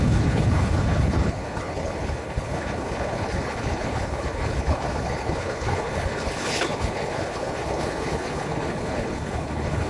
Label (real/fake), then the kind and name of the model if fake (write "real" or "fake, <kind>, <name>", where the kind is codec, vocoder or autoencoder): fake, codec, HILCodec